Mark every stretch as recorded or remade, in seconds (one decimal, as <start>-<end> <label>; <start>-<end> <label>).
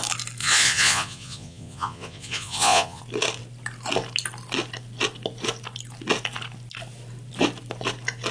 0.0-0.4 recorded; 0.4-3.0 remade; 3.0-8.3 recorded